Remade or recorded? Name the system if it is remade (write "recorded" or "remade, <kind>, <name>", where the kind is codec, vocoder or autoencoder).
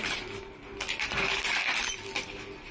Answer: recorded